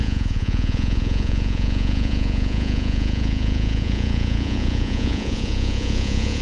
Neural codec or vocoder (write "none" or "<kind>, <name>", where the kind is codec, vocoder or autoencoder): vocoder, Vocos